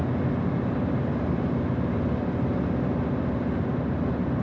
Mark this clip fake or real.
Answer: real